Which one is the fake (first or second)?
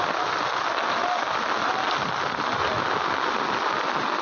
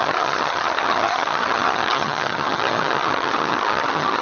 second